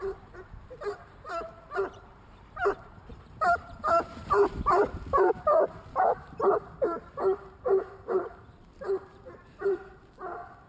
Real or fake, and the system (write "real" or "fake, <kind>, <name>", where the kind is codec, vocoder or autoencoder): fake, vocoder, BigVGAN v2